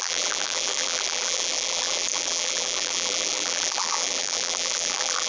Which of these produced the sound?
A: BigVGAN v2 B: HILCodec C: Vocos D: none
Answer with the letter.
A